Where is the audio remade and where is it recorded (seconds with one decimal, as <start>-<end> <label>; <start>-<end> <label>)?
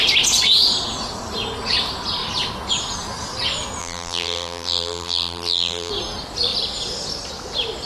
0.0-3.8 recorded; 3.8-5.9 remade; 5.9-7.9 recorded